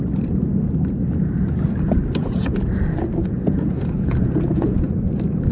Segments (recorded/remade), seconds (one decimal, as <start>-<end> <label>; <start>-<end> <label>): 0.0-2.2 recorded; 2.2-2.7 remade; 2.7-3.2 recorded; 3.2-4.9 remade; 4.9-5.5 recorded